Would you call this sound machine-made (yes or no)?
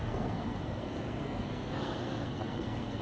yes